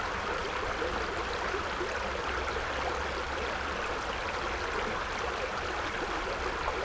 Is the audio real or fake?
real